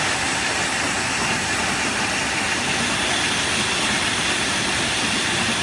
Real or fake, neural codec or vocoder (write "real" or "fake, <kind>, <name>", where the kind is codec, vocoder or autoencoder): real